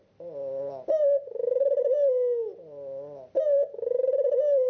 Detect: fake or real real